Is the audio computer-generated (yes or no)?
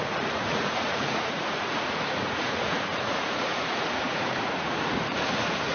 yes